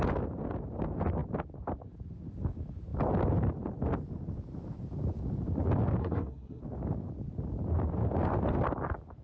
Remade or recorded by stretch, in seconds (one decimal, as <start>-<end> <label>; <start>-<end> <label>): 0.0-6.0 recorded; 6.0-6.6 remade; 6.6-9.2 recorded